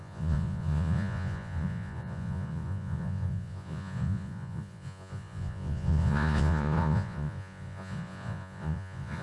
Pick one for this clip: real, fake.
fake